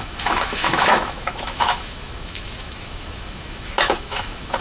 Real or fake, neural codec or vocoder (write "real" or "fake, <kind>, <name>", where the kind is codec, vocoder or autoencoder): fake, autoencoder, DAC-VAE